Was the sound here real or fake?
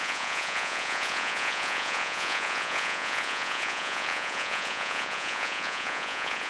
fake